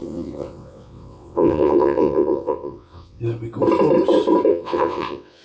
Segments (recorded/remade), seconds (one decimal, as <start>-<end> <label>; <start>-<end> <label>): 0.0-3.2 remade; 3.2-4.5 recorded; 4.5-5.4 remade